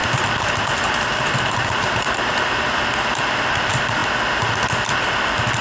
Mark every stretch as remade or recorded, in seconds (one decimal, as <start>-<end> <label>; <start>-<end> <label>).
0.0-3.4 remade; 3.4-5.6 recorded